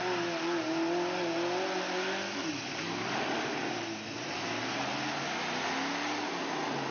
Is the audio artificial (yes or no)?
no